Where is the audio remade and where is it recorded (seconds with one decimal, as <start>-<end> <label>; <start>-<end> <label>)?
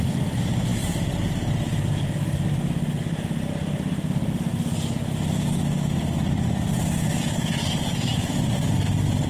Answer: 0.0-9.3 recorded